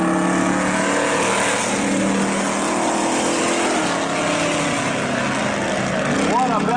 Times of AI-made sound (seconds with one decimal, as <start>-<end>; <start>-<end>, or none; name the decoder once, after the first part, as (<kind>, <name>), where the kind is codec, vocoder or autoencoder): none